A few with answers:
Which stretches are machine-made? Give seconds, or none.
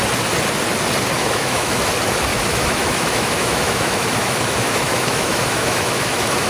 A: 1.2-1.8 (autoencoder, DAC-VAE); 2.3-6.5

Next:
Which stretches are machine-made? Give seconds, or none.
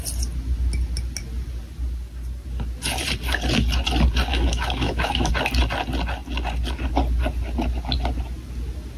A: 4.3-5.3 (autoencoder, DAC-VAE)